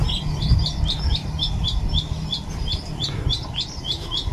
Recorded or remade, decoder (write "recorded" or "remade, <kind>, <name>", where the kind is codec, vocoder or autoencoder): recorded